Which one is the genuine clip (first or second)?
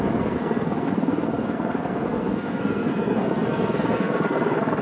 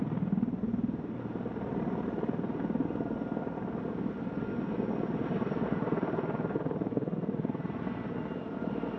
second